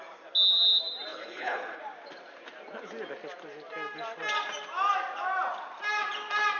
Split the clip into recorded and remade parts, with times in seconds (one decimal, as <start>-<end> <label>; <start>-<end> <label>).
0.0-1.1 recorded; 1.1-1.8 remade; 1.8-6.6 recorded